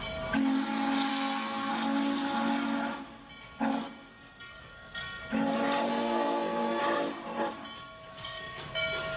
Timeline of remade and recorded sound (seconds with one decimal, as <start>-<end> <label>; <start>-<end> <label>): 0.0-1.1 recorded; 1.1-1.7 remade; 1.7-4.1 recorded; 4.1-5.2 remade; 5.2-5.9 recorded; 5.9-6.8 remade; 6.8-8.1 recorded; 8.1-8.7 remade; 8.7-9.2 recorded